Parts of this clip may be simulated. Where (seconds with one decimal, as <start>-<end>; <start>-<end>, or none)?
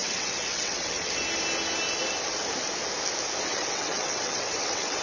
0.0-1.2; 3.5-5.0